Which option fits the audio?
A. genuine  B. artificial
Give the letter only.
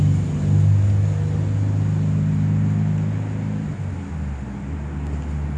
A